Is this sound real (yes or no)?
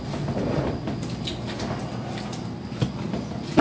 yes